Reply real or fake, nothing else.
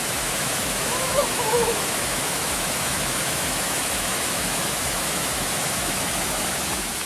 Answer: fake